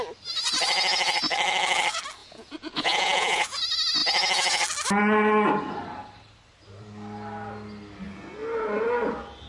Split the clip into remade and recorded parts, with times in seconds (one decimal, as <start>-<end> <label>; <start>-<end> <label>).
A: 0.0-2.2 recorded; 2.2-3.6 remade; 3.6-9.5 recorded